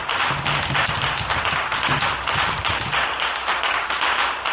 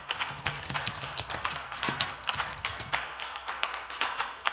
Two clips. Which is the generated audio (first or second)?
second